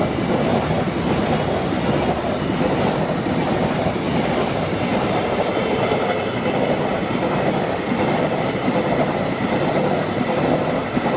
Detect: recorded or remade recorded